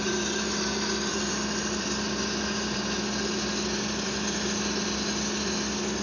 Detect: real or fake real